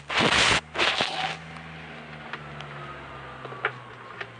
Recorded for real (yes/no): yes